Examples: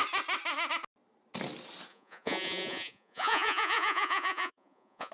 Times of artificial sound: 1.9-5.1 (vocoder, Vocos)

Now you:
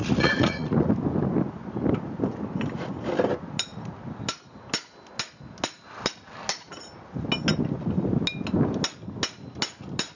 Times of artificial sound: 0.0-0.9 (vocoder, Vocos)